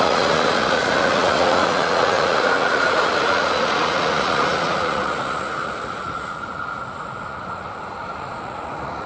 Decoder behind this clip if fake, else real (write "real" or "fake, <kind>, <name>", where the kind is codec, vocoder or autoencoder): fake, vocoder, Vocos